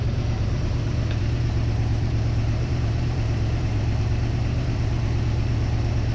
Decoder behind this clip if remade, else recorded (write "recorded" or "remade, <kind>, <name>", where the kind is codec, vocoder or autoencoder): remade, vocoder, BigVGAN v2